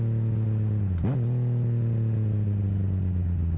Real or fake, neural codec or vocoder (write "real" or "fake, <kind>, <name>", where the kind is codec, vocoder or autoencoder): real